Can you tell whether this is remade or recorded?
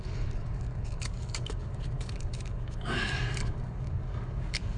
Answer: remade